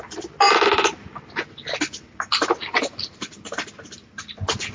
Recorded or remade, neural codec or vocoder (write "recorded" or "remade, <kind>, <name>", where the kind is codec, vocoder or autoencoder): recorded